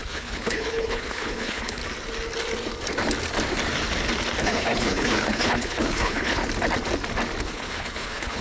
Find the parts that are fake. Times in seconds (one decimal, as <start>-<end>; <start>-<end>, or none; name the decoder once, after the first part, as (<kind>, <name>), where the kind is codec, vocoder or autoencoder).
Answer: 0.0-1.8 (codec, HILCodec); 4.4-6.4; 7.4-8.4